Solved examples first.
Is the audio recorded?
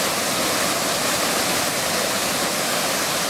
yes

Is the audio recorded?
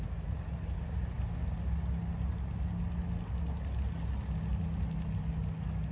yes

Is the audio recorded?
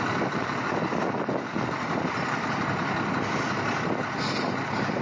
yes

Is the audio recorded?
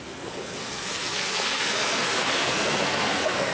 no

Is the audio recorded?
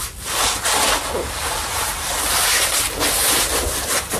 yes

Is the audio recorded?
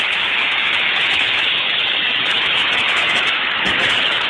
no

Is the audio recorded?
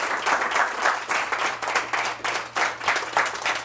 yes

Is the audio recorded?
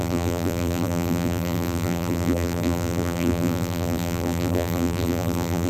no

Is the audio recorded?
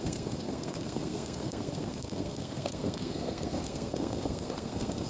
no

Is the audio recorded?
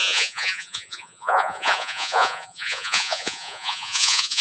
no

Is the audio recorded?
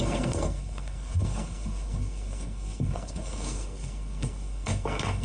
no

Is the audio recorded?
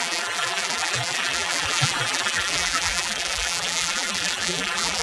no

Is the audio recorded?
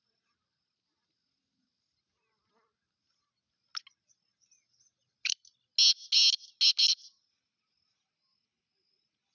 yes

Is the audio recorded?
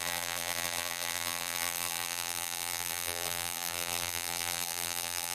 no